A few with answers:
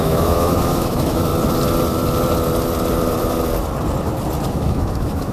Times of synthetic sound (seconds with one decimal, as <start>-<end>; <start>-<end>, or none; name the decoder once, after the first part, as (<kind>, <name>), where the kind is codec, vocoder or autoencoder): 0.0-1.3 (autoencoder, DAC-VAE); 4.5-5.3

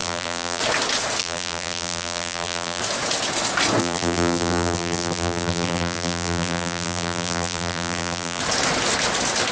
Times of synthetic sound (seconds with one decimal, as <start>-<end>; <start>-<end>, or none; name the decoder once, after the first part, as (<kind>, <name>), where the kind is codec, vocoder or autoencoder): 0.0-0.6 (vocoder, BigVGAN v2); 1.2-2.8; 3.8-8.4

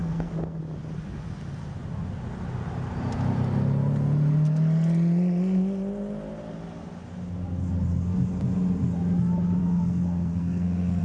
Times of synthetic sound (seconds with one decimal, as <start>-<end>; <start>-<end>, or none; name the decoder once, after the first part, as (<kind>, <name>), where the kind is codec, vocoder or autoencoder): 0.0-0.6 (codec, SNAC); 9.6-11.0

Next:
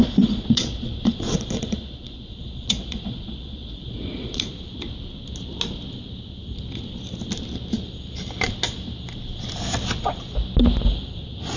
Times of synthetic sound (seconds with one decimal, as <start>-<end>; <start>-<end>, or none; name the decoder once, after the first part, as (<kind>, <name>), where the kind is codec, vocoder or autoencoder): 0.0-4.5 (vocoder, Vocos)

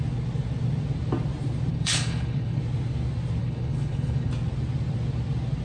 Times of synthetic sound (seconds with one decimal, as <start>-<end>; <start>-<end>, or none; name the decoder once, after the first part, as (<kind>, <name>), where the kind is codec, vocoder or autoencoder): 1.7-2.6 (codec, HILCodec); 3.4-4.3